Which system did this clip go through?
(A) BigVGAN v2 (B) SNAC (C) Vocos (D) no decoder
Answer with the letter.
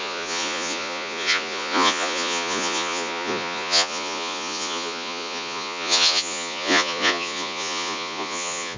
C